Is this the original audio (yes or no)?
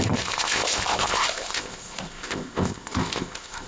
no